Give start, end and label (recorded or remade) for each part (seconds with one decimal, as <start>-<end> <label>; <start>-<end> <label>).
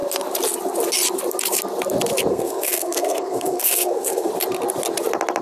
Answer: 0.0-2.3 recorded; 2.3-4.3 remade; 4.3-5.4 recorded